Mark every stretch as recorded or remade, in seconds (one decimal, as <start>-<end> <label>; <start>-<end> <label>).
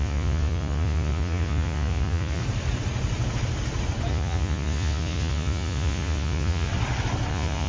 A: 0.0-2.4 remade; 2.4-4.1 recorded; 4.1-6.7 remade; 6.7-7.3 recorded; 7.3-7.7 remade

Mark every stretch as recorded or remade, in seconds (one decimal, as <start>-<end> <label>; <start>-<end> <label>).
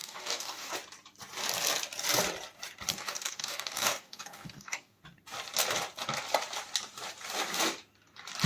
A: 0.0-0.7 remade; 0.7-2.9 recorded; 2.9-5.0 remade; 5.0-8.5 recorded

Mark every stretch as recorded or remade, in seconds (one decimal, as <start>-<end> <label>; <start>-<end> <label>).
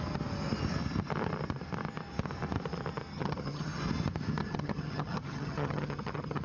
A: 0.0-3.1 recorded; 3.1-3.8 remade; 3.8-4.4 recorded; 4.4-6.4 remade